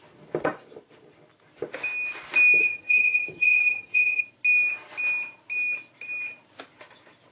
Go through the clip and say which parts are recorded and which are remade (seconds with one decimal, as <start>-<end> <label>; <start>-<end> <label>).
0.0-2.6 recorded; 2.6-4.2 remade; 4.2-7.3 recorded